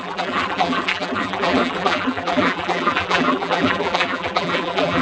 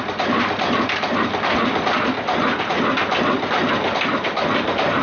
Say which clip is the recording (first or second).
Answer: second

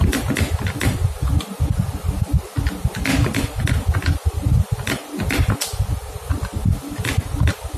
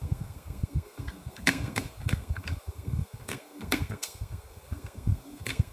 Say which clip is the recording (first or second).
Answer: first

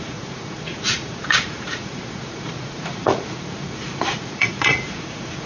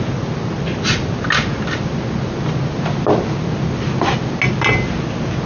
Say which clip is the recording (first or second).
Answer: second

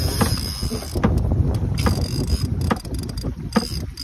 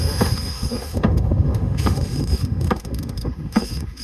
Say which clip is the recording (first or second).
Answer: first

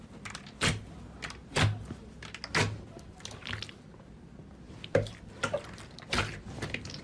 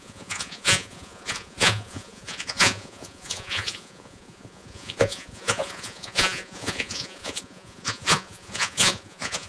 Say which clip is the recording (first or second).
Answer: first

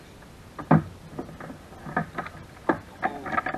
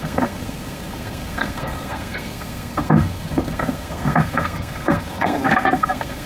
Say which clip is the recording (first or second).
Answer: first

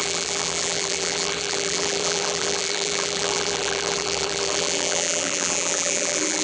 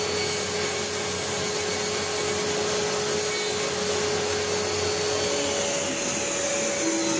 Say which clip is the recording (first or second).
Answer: second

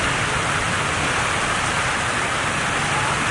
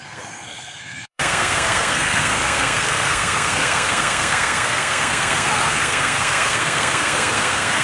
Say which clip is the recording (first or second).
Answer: first